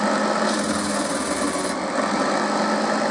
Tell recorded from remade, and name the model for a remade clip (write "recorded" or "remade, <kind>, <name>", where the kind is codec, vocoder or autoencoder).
recorded